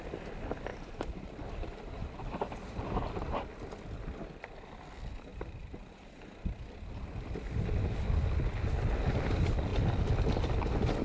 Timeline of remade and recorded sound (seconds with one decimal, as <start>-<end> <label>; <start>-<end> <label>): 0.0-0.7 recorded; 0.7-3.1 remade; 3.1-5.3 recorded; 5.3-6.1 remade; 6.1-11.0 recorded